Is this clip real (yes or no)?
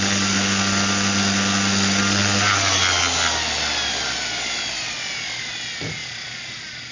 yes